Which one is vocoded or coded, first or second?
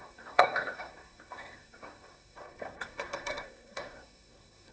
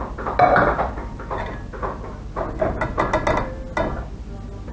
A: first